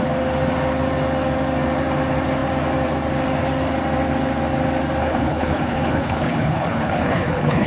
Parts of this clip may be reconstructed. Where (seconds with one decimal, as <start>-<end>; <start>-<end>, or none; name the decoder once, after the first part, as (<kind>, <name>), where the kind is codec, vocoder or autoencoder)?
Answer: 5.0-7.7 (codec, HILCodec)